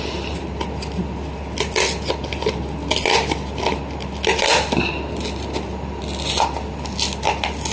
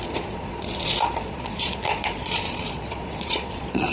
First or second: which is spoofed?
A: second